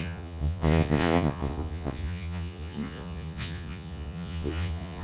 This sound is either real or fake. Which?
fake